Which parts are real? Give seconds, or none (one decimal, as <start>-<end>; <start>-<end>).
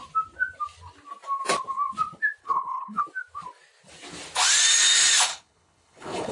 0.0-2.4; 3.0-5.3